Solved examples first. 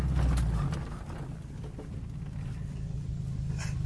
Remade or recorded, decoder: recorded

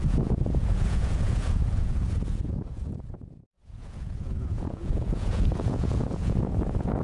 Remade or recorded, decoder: remade, vocoder, Vocos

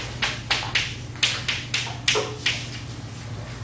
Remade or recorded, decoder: recorded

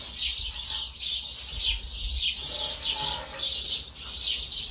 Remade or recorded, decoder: recorded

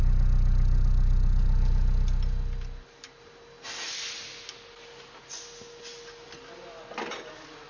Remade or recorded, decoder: recorded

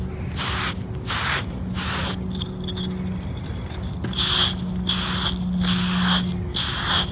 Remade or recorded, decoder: recorded